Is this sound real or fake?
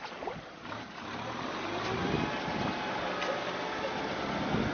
real